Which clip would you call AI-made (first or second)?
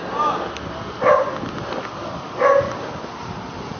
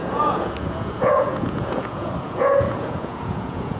second